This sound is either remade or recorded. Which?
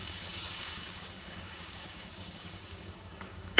remade